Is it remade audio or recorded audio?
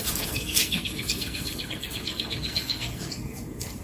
remade